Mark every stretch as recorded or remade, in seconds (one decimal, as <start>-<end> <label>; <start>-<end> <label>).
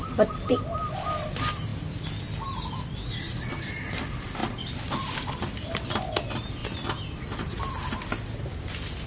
0.0-4.4 recorded; 4.4-6.0 remade; 6.0-6.6 recorded; 6.6-7.6 remade; 7.6-9.1 recorded